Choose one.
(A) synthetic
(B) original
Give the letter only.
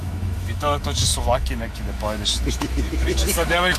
A